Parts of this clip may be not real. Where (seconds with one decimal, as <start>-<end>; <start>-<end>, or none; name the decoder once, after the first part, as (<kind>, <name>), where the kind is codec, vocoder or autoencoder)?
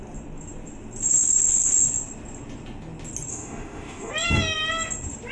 3.3-4.1 (autoencoder, DAC-VAE)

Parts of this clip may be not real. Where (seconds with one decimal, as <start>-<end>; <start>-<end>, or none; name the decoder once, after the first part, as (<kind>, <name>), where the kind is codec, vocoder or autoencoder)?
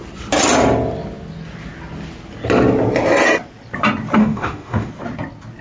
4.2-4.9 (autoencoder, DAC-VAE)